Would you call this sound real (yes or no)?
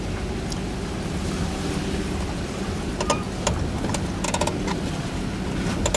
yes